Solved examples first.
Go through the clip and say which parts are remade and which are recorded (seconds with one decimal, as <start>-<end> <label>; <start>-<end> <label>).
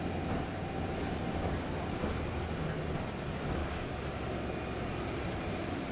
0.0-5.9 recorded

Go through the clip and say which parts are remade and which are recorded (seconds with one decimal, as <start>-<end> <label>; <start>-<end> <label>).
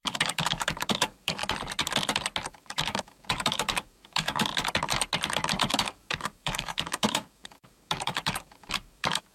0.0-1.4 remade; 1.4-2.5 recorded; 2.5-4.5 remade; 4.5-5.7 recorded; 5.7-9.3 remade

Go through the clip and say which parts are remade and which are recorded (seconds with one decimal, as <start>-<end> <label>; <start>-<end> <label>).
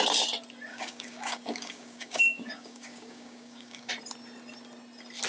0.0-0.7 recorded; 0.7-3.9 remade; 3.9-5.3 recorded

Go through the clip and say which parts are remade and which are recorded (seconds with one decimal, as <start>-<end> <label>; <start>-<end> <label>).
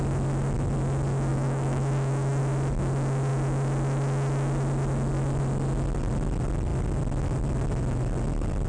0.0-1.3 recorded; 1.3-2.4 remade; 2.4-8.7 recorded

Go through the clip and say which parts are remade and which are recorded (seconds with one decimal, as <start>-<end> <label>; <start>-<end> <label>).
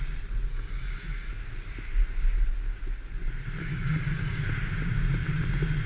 0.0-0.5 recorded; 0.5-1.3 remade; 1.3-3.6 recorded; 3.6-4.4 remade; 4.4-5.9 recorded